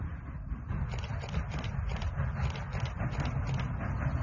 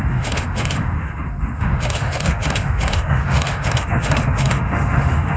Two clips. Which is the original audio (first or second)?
first